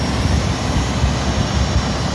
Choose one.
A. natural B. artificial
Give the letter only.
A